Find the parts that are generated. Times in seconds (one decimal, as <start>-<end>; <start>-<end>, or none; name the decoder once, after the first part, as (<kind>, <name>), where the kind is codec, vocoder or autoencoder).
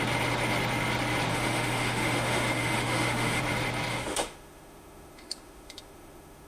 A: 1.3-3.4 (autoencoder, DAC-VAE); 3.9-6.5